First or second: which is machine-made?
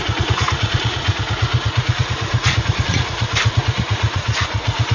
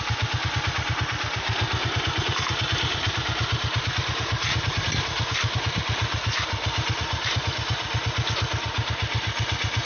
first